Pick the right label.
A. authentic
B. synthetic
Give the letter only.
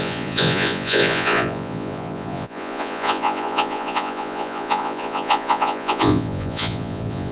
B